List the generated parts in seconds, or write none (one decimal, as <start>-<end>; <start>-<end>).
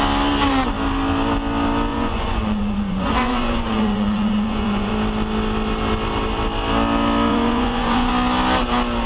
1.9-4.9; 7.3-8.1